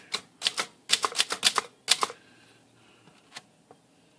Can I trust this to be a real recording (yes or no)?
yes